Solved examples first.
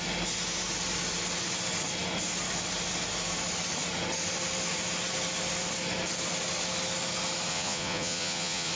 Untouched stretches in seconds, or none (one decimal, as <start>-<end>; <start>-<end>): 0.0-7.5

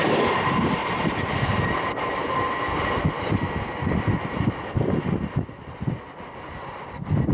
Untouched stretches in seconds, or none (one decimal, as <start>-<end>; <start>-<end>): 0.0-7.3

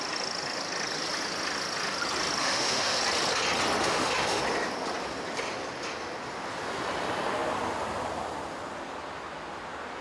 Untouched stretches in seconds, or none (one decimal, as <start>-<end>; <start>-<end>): 0.0-2.4; 3.0-3.8; 4.4-10.0

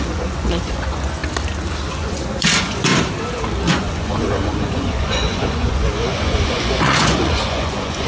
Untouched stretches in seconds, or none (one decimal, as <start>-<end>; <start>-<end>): 1.2-1.9; 2.9-3.7

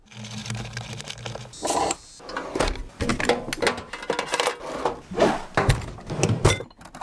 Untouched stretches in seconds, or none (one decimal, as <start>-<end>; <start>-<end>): 0.0-7.0